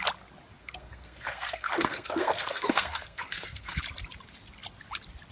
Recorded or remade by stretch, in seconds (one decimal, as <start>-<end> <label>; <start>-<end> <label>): 0.0-0.6 recorded; 0.6-3.8 remade; 3.8-5.3 recorded